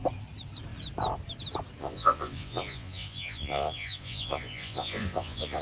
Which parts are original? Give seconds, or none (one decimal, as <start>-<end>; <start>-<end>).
0.0-1.8